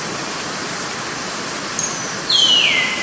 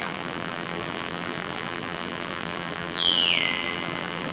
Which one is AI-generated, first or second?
second